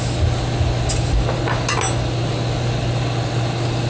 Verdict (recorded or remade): recorded